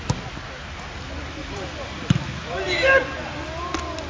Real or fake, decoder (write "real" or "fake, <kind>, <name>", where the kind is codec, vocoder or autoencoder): real